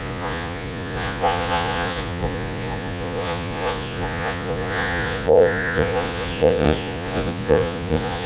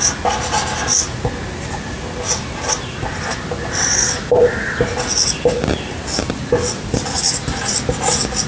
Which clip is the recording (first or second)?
second